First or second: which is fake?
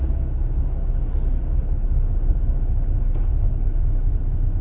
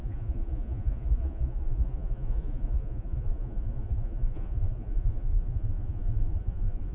second